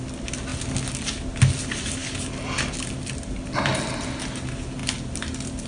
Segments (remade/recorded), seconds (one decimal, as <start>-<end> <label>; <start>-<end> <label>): 0.0-5.7 recorded